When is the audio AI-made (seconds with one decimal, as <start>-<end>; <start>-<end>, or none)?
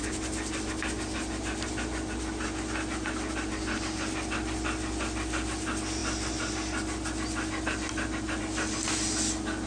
none